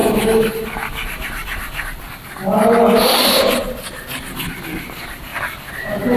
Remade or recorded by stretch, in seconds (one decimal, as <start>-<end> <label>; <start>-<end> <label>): 0.0-0.5 remade; 0.5-6.2 recorded